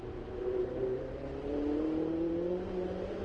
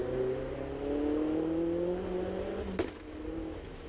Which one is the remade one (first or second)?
first